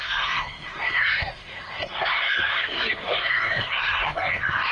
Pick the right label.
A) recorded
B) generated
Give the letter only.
B